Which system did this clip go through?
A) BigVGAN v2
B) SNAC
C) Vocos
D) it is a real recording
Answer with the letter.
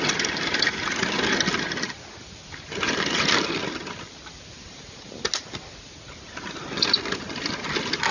D